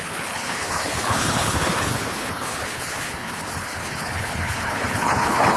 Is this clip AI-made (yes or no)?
yes